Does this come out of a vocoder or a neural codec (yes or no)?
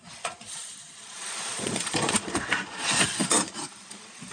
yes